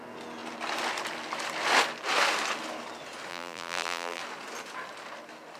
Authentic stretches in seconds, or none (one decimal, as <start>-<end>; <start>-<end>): 0.0-3.3; 4.2-5.6

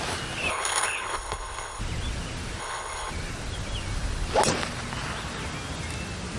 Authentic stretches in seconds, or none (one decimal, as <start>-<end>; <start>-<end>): 0.0-0.5; 1.8-2.6; 3.1-6.4

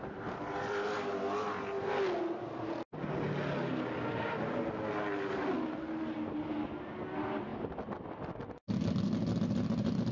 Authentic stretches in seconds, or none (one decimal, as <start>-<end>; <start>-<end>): 0.0-10.1

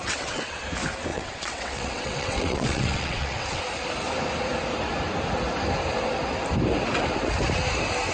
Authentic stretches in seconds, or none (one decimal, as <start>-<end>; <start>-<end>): 0.6-1.1; 3.6-8.1

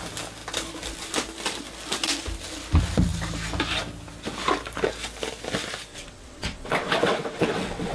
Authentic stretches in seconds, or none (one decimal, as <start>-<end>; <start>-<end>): 0.0-5.9